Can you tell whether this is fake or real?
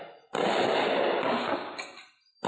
real